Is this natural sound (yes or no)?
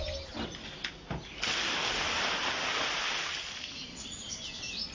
yes